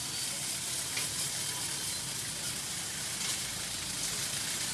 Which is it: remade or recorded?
recorded